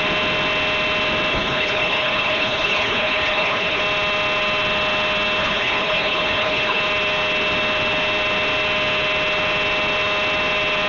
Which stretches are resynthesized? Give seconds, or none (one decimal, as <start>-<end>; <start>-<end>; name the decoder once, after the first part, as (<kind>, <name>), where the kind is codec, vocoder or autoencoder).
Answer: 1.3-3.8 (codec, HILCodec); 5.4-6.8